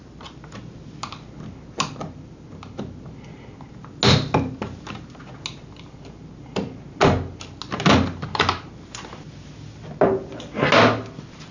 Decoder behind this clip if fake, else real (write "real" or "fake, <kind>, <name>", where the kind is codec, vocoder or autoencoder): real